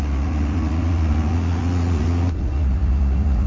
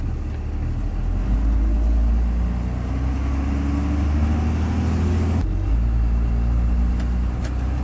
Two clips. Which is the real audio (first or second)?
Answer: second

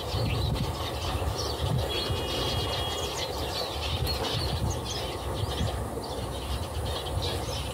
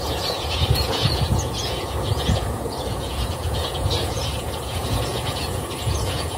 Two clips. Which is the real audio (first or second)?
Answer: first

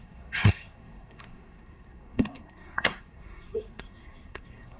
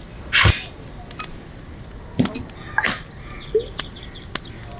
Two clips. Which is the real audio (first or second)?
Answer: second